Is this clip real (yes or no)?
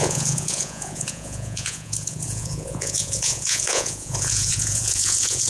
no